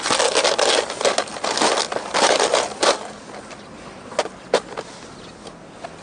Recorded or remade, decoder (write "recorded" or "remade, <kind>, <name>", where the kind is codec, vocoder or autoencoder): recorded